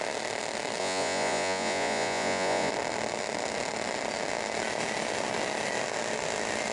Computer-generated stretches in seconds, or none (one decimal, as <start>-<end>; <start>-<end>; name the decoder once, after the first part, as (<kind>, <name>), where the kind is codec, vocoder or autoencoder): 0.8-2.7 (vocoder, Vocos)